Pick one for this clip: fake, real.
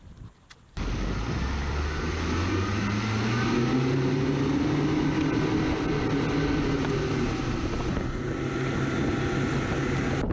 real